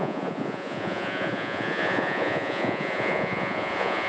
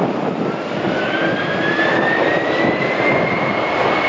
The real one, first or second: second